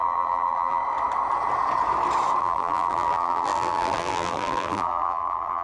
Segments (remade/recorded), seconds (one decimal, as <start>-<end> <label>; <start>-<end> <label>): 0.0-0.8 remade; 0.8-2.4 recorded; 2.4-5.6 remade